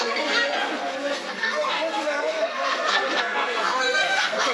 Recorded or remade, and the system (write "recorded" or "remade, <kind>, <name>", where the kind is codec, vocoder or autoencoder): remade, codec, SNAC